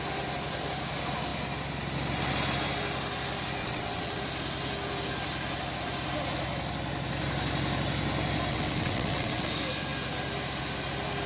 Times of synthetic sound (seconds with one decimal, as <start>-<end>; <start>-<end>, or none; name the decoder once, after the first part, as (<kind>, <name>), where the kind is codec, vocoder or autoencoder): 3.6-4.2 (vocoder, WaveNeXt); 8.5-9.5